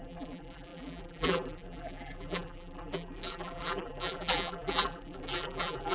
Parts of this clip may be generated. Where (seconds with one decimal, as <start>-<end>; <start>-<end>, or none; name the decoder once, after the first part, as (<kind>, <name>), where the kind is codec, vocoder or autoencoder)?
0.0-5.9 (vocoder, BigVGAN v2)